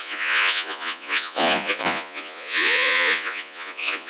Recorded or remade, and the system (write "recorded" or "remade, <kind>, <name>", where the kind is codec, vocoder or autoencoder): remade, vocoder, Vocos